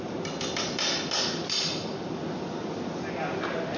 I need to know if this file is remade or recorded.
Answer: recorded